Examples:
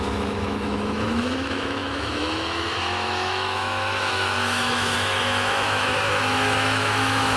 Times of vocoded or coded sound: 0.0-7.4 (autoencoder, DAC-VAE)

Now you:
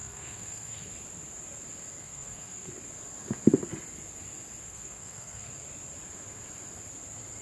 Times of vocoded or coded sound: 0.0-0.9 (codec, SNAC); 2.0-2.7; 4.6-5.5

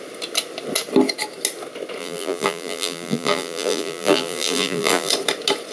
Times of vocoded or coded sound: 2.0-5.1 (vocoder, BigVGAN v2)

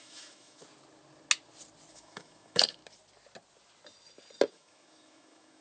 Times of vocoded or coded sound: 0.0-0.6 (autoencoder, DAC-VAE); 1.9-2.8; 4.5-5.6